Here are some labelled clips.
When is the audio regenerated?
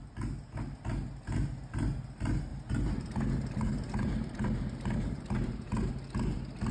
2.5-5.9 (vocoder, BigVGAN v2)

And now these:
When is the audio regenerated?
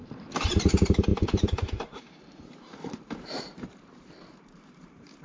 0.0-5.2 (vocoder, BigVGAN v2)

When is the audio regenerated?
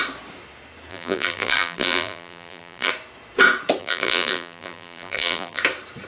0.9-2.9 (vocoder, BigVGAN v2); 3.8-5.6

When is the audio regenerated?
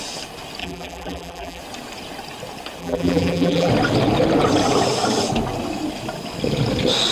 0.6-1.6 (vocoder, BigVGAN v2); 2.8-3.7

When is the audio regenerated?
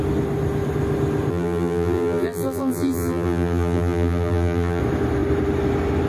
1.3-4.8 (vocoder, BigVGAN v2)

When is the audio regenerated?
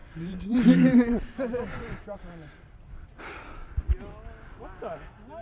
0.0-3.2 (vocoder, BigVGAN v2)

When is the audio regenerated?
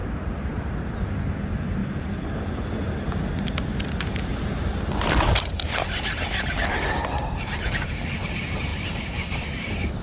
0.0-0.6 (vocoder, BigVGAN v2); 1.8-2.3; 4.3-6.7; 8.7-10.0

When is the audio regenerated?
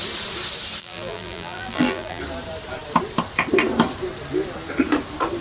0.8-2.2 (vocoder, BigVGAN v2)